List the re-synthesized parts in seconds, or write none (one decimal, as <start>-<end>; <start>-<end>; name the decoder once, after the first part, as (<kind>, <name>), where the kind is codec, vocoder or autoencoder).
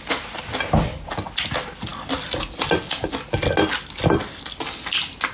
none